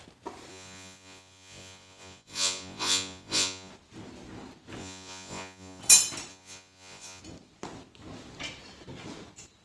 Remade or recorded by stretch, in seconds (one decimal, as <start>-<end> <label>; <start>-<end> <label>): 0.0-0.5 recorded; 0.5-3.7 remade; 3.7-4.8 recorded; 4.8-5.8 remade; 5.8-6.3 recorded; 6.3-7.2 remade; 7.2-9.6 recorded

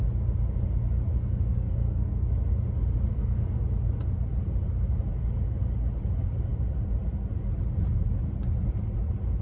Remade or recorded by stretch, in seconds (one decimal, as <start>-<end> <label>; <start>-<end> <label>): 0.0-1.1 recorded; 1.1-2.3 remade; 2.3-3.1 recorded; 3.1-3.6 remade; 3.6-9.4 recorded

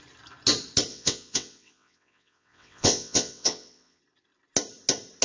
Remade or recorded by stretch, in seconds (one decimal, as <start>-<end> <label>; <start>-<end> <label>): 0.0-0.9 recorded; 0.9-4.0 remade; 4.0-5.2 recorded

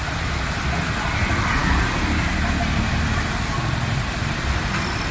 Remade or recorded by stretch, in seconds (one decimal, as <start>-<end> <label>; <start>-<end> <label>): 0.0-5.1 recorded

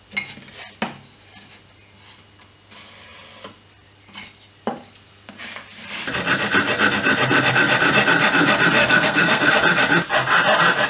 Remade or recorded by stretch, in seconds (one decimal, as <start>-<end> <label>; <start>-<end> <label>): 0.0-8.8 recorded; 8.8-9.5 remade; 9.5-10.9 recorded

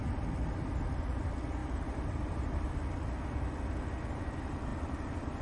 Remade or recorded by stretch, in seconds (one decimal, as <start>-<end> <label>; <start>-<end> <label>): 0.0-1.6 recorded; 1.6-2.7 remade; 2.7-5.4 recorded

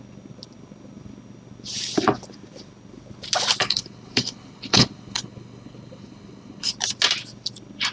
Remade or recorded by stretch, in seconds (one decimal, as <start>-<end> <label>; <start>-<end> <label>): 0.0-3.6 recorded; 3.6-6.7 remade; 6.7-7.9 recorded